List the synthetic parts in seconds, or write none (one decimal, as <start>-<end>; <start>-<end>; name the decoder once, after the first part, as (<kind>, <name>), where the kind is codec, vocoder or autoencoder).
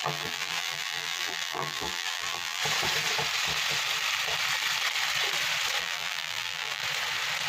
0.0-2.6 (vocoder, BigVGAN v2); 5.8-6.8